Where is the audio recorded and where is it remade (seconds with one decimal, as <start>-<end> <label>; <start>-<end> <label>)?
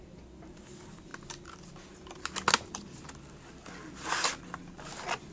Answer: 0.0-5.3 recorded